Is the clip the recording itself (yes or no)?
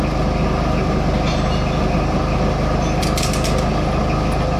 yes